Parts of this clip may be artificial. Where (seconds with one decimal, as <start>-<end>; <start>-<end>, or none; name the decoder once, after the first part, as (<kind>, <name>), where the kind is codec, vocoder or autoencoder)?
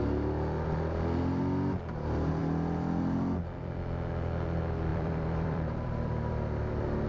4.9-6.3 (vocoder, BigVGAN v2)